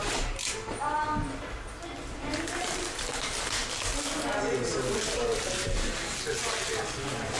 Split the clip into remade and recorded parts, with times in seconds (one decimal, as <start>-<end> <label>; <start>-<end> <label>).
0.0-5.3 recorded; 5.3-6.1 remade; 6.1-7.4 recorded